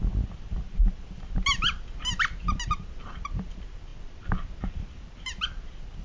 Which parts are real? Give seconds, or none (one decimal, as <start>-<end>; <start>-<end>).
0.0-6.0